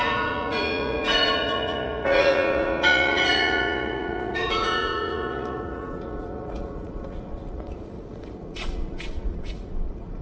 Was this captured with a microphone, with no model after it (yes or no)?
no